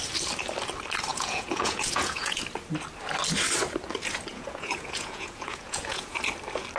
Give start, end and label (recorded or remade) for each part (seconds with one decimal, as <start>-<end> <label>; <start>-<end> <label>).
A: 0.0-1.1 recorded; 1.1-2.4 remade; 2.4-4.3 recorded; 4.3-6.2 remade; 6.2-6.8 recorded